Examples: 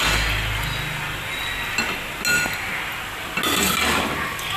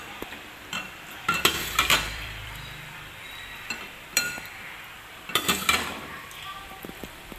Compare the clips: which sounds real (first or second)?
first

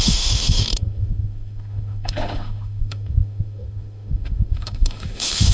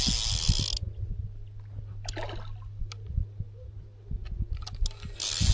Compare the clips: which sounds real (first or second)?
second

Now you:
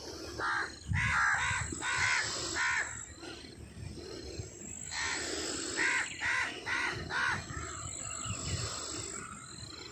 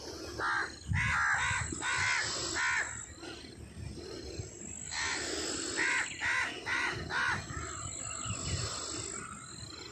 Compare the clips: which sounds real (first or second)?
second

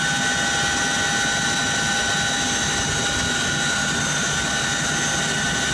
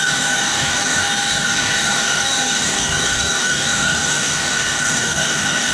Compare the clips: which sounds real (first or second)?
first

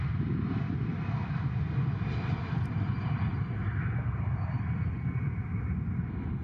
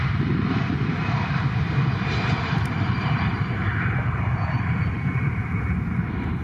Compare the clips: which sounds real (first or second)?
first